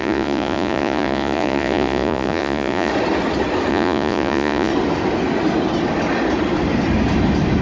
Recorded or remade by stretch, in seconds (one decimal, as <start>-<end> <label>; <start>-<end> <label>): 0.0-2.9 remade; 2.9-3.7 recorded; 3.7-4.7 remade; 4.7-7.6 recorded